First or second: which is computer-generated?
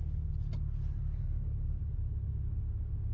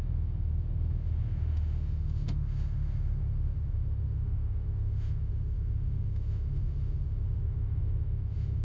second